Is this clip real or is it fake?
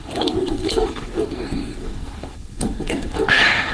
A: fake